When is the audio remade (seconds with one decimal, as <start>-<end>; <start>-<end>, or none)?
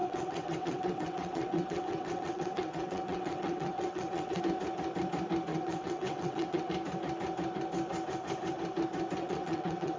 0.0-4.4; 5.5-6.7; 9.2-10.0